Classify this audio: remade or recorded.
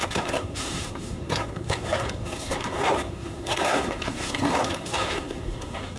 remade